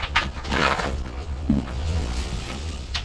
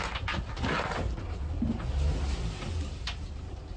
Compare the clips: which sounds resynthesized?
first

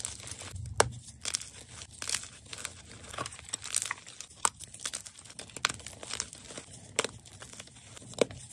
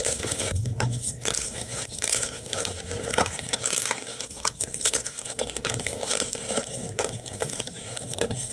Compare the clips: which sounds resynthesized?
second